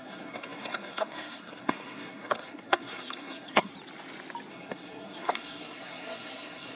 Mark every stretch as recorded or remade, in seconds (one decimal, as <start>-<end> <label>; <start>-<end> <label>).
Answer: 0.0-3.7 remade; 3.7-4.5 recorded; 4.5-6.8 remade